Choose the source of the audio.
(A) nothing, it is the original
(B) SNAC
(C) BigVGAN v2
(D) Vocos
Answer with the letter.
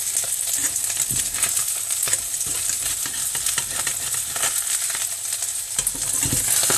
A